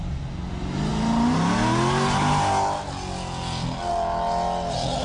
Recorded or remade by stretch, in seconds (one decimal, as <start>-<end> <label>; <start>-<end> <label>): 0.0-5.0 recorded